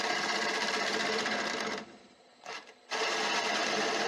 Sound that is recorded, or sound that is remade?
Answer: remade